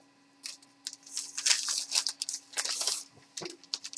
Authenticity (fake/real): real